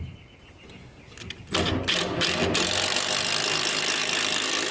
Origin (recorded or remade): recorded